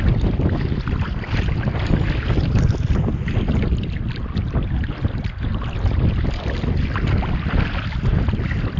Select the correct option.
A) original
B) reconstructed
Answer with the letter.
A